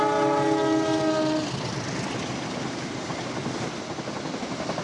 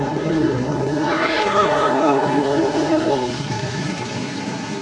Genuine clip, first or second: first